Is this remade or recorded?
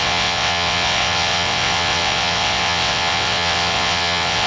remade